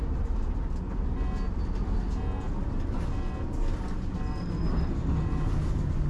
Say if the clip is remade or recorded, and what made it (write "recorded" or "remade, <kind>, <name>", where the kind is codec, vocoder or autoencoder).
recorded